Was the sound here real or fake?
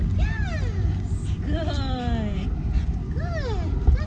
real